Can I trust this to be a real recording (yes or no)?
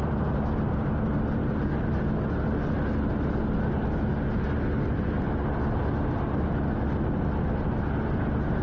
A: yes